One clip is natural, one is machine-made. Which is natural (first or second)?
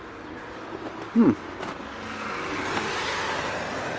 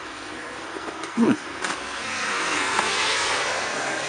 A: first